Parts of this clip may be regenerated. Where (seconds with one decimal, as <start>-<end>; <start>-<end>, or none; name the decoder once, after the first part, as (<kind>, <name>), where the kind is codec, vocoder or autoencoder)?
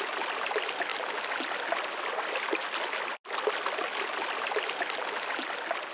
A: none